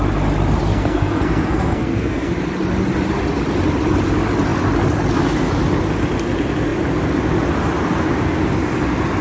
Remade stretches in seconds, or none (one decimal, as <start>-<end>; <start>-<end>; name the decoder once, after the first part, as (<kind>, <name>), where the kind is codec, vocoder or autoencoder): 0.7-2.3 (codec, SNAC)